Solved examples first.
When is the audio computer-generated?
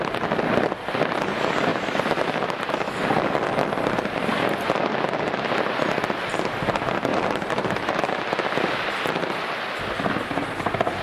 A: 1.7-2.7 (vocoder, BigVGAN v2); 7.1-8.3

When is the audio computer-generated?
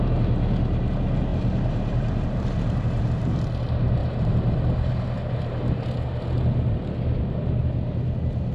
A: 1.3-3.1 (vocoder, BigVGAN v2); 4.0-5.0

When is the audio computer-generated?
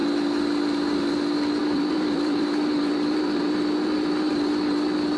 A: 1.6-4.3 (vocoder, BigVGAN v2)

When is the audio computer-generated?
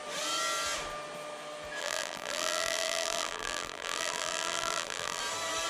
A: 1.8-5.2 (vocoder, BigVGAN v2)